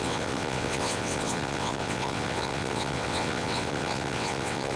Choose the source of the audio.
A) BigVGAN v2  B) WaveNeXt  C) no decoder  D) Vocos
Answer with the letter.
B